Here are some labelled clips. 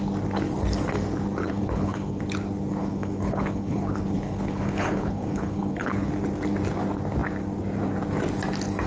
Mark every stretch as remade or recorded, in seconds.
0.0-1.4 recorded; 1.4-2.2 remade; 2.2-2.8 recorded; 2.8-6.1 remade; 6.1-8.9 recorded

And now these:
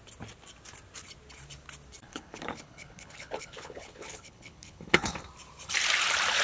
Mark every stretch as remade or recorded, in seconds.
0.0-2.0 recorded; 2.0-5.2 remade; 5.2-6.4 recorded

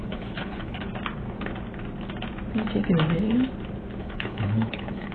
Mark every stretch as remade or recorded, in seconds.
0.0-0.9 remade; 0.9-4.0 recorded; 4.0-5.1 remade

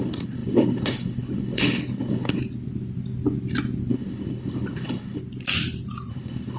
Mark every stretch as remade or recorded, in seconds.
0.0-2.4 remade; 2.4-3.9 recorded; 3.9-5.2 remade; 5.2-6.1 recorded; 6.1-6.6 remade

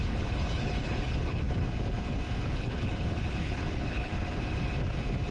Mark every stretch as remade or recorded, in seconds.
0.0-1.6 remade; 1.6-2.5 recorded; 2.5-4.1 remade; 4.1-5.3 recorded